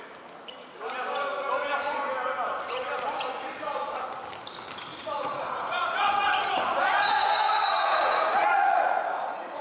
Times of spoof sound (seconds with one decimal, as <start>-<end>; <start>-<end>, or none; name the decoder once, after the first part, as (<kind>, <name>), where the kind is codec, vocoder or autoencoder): 4.9-9.6 (vocoder, Vocos)